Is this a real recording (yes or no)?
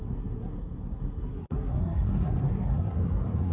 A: no